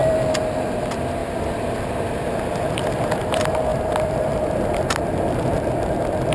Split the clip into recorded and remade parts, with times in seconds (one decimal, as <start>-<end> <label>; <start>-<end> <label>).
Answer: 0.0-0.6 recorded; 0.6-6.3 remade